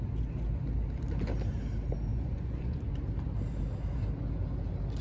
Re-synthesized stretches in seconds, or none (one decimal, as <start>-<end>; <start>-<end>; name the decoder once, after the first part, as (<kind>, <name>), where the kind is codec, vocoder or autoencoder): 2.1-2.9 (vocoder, Vocos)